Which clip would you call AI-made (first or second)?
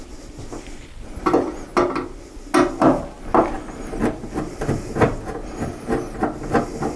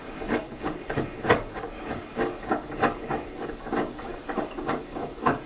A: second